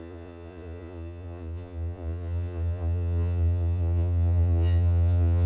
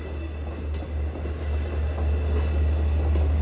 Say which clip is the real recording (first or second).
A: second